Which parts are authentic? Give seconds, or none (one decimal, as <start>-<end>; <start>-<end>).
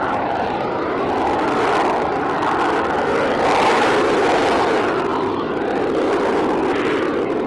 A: 0.0-7.5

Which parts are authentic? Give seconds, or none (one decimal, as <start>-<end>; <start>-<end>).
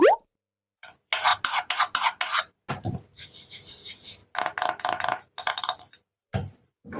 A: 1.3-2.7; 4.2-5.0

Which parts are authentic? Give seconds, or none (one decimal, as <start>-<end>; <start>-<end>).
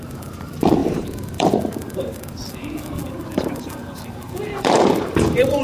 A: none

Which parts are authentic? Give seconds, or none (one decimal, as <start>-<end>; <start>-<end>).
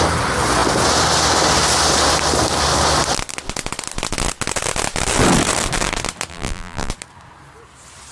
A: 0.0-6.3; 6.9-8.1